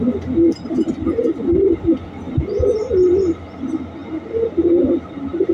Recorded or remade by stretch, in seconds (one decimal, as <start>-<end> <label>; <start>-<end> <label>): 0.0-5.5 recorded